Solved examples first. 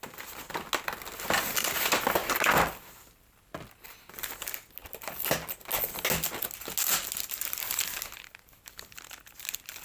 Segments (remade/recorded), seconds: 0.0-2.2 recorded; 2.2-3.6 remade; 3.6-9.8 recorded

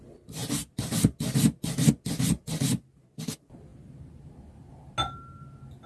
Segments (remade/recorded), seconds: 0.0-5.9 recorded

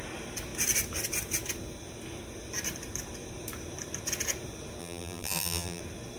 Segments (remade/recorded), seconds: 0.0-4.8 recorded; 4.8-5.8 remade; 5.8-6.2 recorded

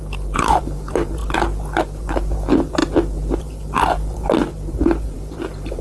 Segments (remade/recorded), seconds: 0.0-1.2 remade; 1.2-2.0 recorded; 2.0-2.8 remade; 2.8-3.4 recorded; 3.4-5.8 remade

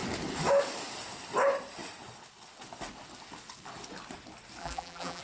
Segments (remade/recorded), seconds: 0.0-4.6 recorded; 4.6-5.2 remade

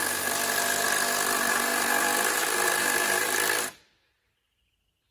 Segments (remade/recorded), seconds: 0.0-5.1 recorded